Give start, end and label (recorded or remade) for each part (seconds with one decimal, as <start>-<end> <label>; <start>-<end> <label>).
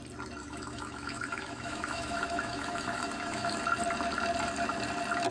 0.0-0.4 recorded; 0.4-3.6 remade; 3.6-5.3 recorded